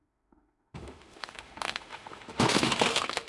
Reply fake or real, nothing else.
fake